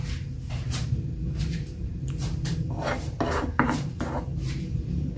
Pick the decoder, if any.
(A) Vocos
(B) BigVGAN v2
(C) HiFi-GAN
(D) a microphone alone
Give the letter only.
B